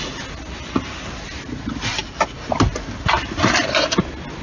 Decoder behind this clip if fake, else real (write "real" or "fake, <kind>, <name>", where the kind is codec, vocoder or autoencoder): real